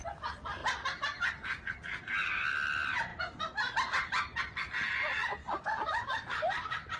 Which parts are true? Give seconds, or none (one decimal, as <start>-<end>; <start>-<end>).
0.6-2.5; 3.1-4.6